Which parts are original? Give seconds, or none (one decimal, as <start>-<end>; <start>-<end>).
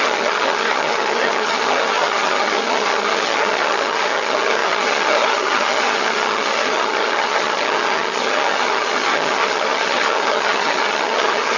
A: none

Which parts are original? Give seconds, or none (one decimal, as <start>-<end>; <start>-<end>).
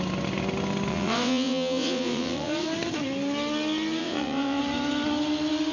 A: 0.0-0.9; 2.5-4.0; 4.6-5.7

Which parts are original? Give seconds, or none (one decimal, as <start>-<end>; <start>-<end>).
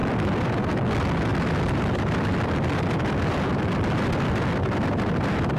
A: 0.0-5.6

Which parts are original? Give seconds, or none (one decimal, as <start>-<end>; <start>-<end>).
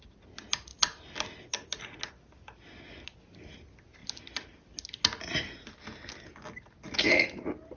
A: 0.0-7.8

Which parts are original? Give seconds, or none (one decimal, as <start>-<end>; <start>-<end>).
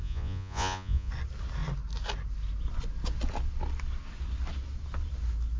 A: 1.1-5.6